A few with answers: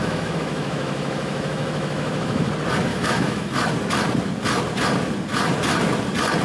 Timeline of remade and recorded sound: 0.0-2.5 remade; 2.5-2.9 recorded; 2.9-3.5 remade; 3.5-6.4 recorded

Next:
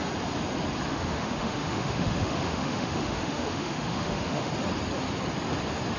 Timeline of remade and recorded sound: 0.0-0.9 recorded; 0.9-4.5 remade; 4.5-6.0 recorded

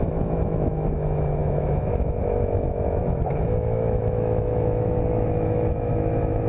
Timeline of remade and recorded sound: 0.0-6.5 remade

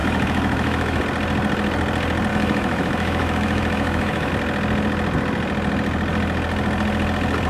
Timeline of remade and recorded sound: 0.0-1.0 remade; 1.0-2.3 recorded; 2.3-4.3 remade; 4.3-7.5 recorded